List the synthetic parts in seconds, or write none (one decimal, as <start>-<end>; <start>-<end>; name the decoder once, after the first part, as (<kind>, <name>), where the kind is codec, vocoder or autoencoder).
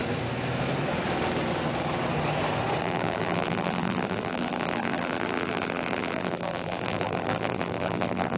2.8-8.4 (vocoder, BigVGAN v2)